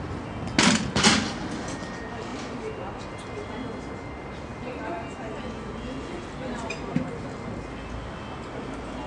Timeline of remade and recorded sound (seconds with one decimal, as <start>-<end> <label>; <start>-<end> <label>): 0.0-9.1 recorded